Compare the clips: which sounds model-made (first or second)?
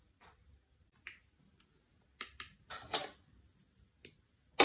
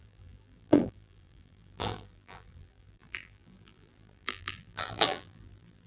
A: second